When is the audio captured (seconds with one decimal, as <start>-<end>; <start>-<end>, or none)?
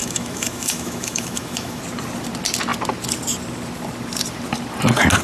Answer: 1.8-5.2